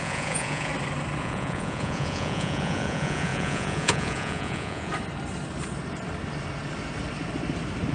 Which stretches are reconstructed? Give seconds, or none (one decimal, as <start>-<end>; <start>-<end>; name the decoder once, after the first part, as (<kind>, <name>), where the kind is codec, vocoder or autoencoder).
0.0-0.7 (vocoder, Vocos); 1.2-4.9